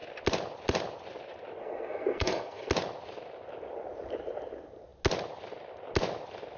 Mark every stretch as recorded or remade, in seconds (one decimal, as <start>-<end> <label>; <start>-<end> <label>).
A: 0.0-1.6 recorded; 1.6-2.7 remade; 2.7-6.6 recorded